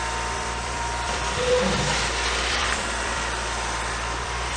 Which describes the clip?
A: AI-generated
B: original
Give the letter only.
A